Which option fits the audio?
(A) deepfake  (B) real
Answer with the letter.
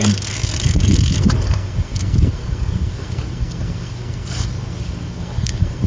A